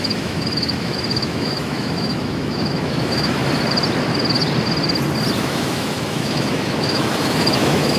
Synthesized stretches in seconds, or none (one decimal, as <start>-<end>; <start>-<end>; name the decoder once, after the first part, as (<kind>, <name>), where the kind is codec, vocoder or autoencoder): 0.0-3.4 (autoencoder, DAC-VAE); 5.4-8.0